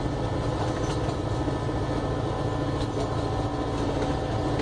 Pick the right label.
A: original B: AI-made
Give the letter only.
A